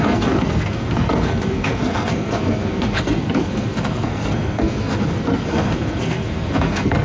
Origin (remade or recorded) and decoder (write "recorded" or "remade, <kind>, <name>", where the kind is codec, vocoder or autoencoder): remade, codec, SNAC